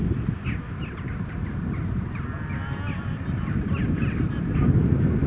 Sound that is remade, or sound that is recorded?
recorded